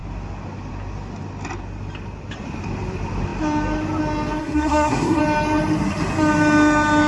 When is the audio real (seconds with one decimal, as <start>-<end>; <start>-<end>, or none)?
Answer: 0.0-4.4; 5.2-7.1